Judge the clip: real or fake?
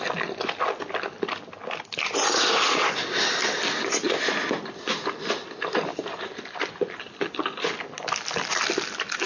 real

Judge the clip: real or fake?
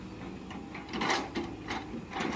real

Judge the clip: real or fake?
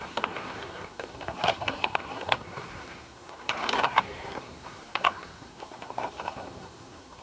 fake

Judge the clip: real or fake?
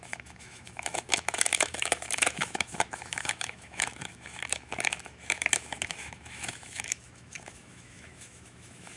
fake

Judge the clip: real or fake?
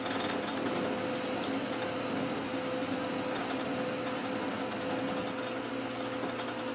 real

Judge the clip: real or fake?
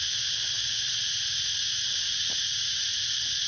real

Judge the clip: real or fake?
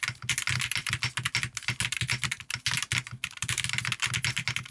real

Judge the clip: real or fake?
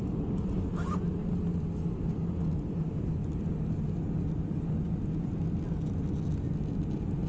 real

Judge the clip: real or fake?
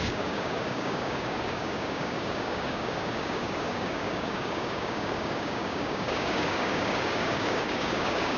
fake